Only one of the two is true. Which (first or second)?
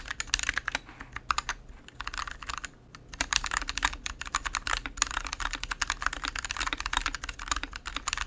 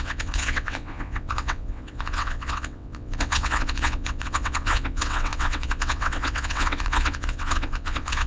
first